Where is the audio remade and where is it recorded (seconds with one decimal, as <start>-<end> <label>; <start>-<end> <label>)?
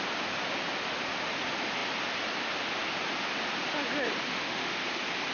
0.0-4.3 recorded; 4.3-4.8 remade; 4.8-5.3 recorded